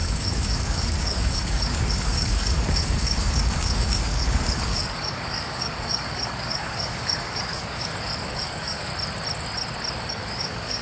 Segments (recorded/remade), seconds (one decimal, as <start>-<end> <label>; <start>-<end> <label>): 0.0-8.9 remade; 8.9-10.1 recorded; 10.1-10.8 remade